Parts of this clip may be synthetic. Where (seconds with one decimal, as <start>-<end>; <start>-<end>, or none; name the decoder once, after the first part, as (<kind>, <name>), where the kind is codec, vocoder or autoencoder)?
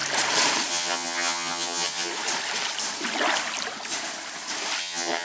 0.7-2.1 (vocoder, HiFi-GAN); 4.8-5.2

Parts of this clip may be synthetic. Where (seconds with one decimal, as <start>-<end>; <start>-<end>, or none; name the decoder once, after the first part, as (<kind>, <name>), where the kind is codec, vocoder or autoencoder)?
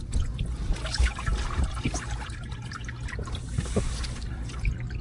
none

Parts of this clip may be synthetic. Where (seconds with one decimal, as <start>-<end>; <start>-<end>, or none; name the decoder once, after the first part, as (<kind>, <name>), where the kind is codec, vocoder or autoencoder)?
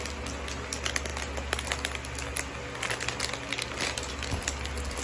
none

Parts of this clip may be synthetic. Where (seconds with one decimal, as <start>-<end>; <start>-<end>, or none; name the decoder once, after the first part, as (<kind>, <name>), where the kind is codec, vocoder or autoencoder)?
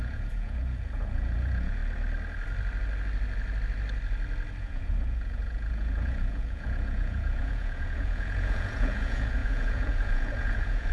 0.0-1.8 (vocoder, Vocos); 4.6-10.9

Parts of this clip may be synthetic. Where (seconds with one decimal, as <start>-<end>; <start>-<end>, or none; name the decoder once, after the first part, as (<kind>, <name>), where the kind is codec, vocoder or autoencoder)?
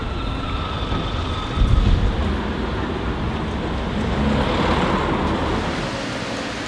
none